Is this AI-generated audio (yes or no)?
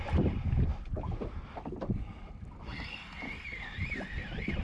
no